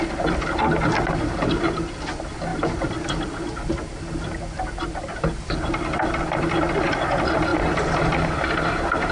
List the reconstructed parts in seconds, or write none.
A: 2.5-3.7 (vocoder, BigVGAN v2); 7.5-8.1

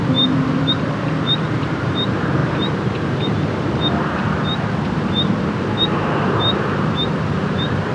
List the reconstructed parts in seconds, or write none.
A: 0.0-2.4 (vocoder, BigVGAN v2); 5.1-7.9